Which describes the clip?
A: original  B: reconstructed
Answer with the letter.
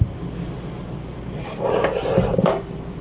A